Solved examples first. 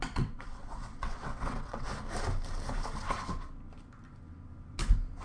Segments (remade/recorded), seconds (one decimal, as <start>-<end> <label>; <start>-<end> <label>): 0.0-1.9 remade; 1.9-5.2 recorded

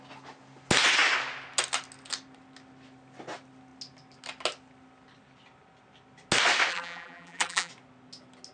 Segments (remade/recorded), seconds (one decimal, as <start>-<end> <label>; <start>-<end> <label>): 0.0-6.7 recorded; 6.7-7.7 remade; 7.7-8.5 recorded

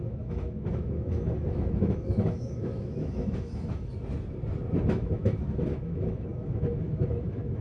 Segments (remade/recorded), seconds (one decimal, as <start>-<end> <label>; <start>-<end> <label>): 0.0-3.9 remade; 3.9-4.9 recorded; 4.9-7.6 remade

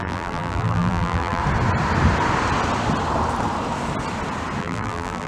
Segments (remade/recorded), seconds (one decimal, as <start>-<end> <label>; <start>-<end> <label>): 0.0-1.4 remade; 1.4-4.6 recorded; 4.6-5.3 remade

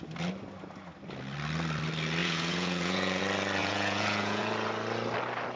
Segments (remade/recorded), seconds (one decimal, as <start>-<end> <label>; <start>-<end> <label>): 0.0-2.2 recorded; 2.2-3.2 remade; 3.2-3.6 recorded; 3.6-4.4 remade; 4.4-5.6 recorded

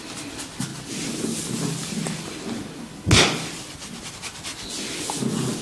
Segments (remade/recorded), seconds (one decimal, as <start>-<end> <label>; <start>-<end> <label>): 0.0-5.6 recorded